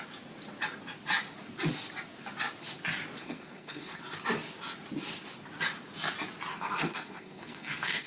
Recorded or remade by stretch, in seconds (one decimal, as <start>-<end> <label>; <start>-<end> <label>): 0.0-3.2 recorded; 3.2-4.0 remade; 4.0-6.5 recorded; 6.5-8.1 remade